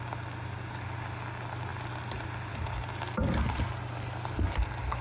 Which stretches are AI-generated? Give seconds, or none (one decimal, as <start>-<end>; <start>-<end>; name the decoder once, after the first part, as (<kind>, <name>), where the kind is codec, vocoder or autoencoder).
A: none